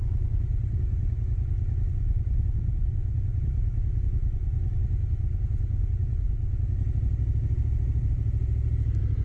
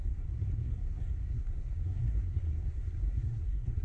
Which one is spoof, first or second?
second